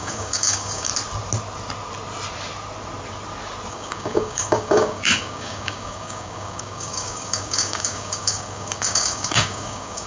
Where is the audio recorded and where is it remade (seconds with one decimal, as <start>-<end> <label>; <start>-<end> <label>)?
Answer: 0.0-0.9 remade; 0.9-3.7 recorded; 3.7-10.1 remade